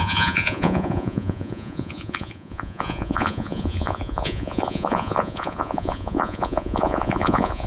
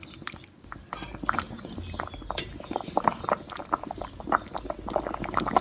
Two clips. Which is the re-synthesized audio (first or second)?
first